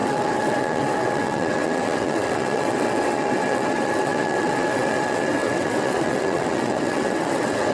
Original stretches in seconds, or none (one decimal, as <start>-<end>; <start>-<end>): none